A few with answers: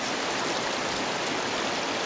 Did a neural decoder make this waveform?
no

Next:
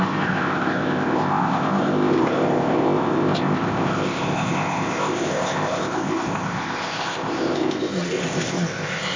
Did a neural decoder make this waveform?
yes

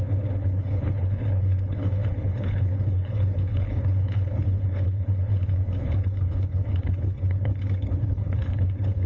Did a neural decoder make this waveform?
yes